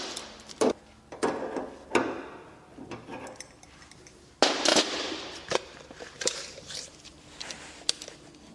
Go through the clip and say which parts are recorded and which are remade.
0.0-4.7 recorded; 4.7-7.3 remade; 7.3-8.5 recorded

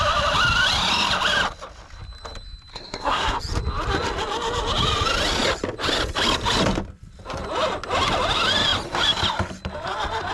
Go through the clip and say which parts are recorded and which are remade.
0.0-2.7 recorded; 2.7-3.4 remade; 3.4-10.3 recorded

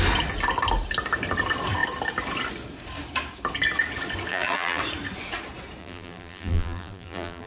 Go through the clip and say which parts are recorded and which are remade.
0.0-4.3 recorded; 4.3-4.8 remade; 4.8-5.8 recorded; 5.8-7.5 remade

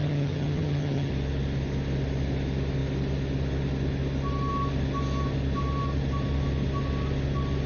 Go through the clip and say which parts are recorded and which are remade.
0.0-1.1 remade; 1.1-7.7 recorded

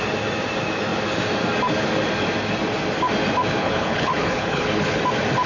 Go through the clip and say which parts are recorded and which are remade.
0.0-3.6 recorded; 3.6-5.0 remade; 5.0-5.5 recorded